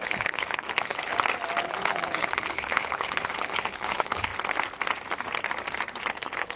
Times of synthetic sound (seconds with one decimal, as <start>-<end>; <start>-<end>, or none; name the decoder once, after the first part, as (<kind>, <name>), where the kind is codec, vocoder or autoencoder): 0.0-1.1 (codec, HILCodec); 1.6-4.3; 6.1-6.6